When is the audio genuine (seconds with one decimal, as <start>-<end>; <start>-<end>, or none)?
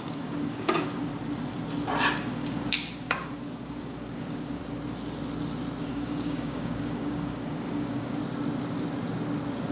1.1-2.1; 4.6-5.8; 8.2-9.7